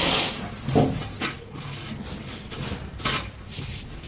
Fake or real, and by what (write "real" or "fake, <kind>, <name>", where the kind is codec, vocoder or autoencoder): real